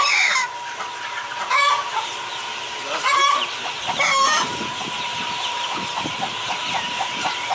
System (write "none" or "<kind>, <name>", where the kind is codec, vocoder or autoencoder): vocoder, BigVGAN v2